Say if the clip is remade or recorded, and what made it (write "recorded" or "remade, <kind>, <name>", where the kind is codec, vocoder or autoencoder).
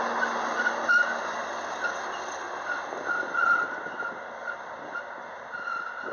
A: recorded